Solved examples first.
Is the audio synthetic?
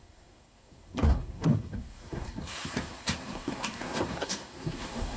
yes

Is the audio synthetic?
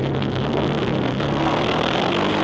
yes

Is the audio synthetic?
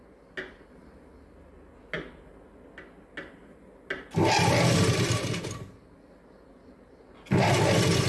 no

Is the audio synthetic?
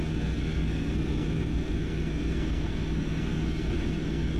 yes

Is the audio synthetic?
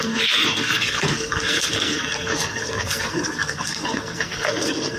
yes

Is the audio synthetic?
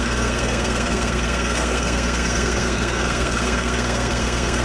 yes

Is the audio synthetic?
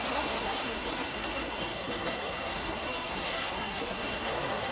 yes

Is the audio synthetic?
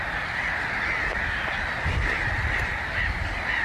no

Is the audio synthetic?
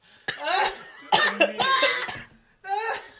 no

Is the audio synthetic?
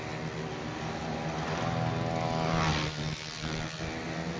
no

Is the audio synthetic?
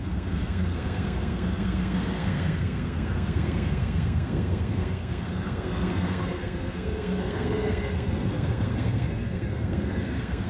yes